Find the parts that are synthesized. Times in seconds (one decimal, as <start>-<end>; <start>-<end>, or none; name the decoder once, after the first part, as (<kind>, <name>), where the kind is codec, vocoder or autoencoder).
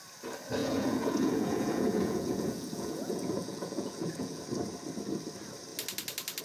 0.6-4.4 (vocoder, Vocos)